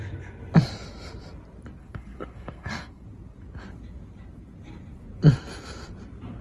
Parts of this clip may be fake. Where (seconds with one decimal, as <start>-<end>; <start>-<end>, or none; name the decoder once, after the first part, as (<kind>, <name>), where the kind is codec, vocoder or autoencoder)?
1.8-3.0 (codec, SNAC)